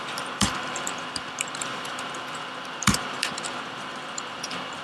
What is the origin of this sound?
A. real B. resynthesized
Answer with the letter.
B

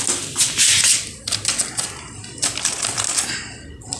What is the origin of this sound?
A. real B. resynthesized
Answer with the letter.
A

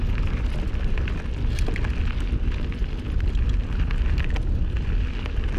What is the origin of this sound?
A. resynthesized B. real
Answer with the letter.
B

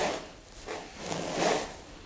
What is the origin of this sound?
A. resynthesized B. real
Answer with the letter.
A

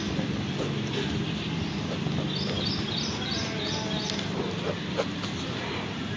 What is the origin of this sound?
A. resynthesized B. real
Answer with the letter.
B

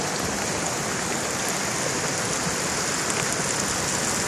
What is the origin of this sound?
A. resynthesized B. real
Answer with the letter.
B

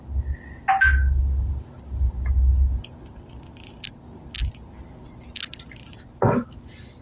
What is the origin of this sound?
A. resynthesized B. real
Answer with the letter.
B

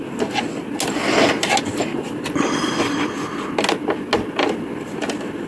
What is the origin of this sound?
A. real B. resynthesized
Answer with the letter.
A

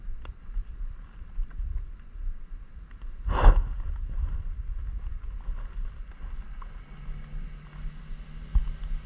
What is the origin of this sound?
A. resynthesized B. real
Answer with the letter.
B